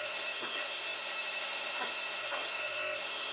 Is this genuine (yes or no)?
no